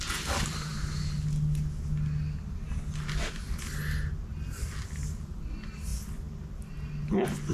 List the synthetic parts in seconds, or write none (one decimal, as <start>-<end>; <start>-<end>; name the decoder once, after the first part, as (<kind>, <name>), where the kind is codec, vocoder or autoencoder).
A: none